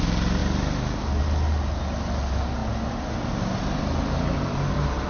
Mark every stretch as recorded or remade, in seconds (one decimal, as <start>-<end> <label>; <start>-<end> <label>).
0.0-5.1 recorded